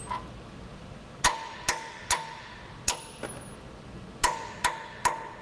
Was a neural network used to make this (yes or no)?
no